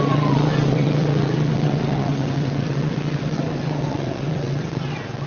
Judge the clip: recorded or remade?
remade